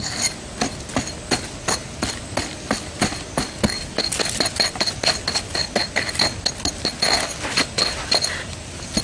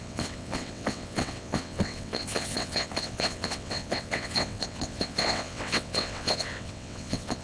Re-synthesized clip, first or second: second